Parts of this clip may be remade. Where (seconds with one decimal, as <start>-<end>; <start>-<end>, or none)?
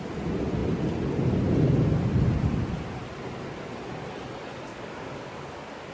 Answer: 4.7-5.9